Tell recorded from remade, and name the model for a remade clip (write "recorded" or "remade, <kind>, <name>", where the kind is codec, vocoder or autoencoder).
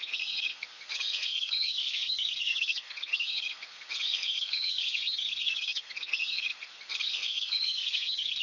remade, codec, SNAC